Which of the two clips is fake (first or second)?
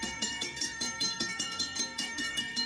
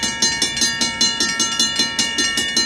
first